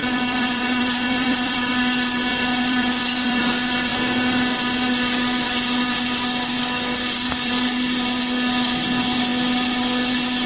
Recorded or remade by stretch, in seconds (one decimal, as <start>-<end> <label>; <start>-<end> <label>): 0.0-1.7 remade; 1.7-2.3 recorded; 2.3-3.5 remade; 3.5-10.5 recorded